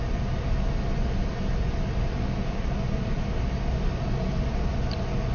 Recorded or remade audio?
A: recorded